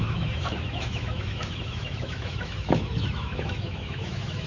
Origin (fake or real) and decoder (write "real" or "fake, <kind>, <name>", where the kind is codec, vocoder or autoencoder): fake, autoencoder, DAC-VAE